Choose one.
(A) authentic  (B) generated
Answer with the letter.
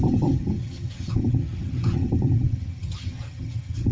B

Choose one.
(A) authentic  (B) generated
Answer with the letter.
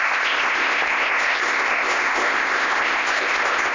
B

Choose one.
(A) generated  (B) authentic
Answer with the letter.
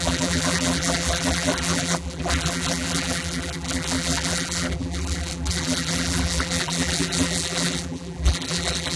A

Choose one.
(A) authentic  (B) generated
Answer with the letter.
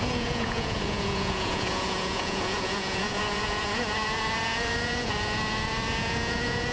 B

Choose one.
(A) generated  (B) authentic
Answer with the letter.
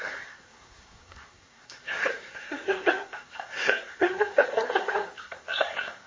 A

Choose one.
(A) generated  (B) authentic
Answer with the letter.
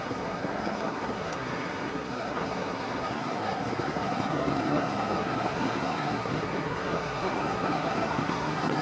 A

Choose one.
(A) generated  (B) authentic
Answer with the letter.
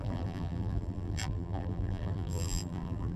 A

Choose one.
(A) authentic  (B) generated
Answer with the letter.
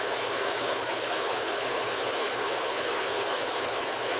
B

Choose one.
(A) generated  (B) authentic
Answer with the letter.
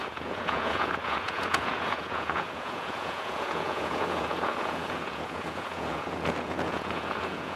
A